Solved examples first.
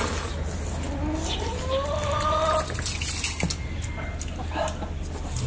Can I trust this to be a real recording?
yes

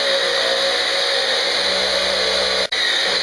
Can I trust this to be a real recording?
yes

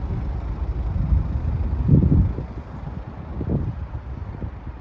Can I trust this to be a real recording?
yes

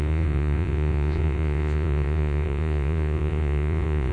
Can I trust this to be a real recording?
no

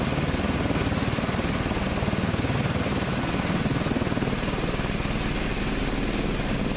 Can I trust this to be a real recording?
yes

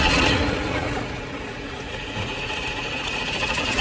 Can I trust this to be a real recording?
no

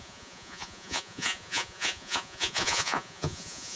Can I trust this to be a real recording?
no